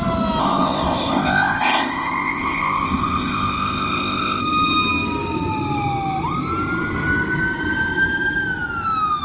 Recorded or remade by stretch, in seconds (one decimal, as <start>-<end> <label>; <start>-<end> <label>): 0.0-0.4 recorded; 0.4-4.4 remade; 4.4-9.2 recorded

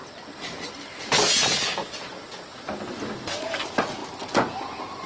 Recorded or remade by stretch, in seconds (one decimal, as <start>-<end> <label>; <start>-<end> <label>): 0.0-5.1 recorded

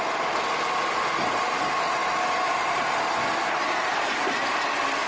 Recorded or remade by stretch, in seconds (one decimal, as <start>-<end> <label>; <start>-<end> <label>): 0.0-5.1 recorded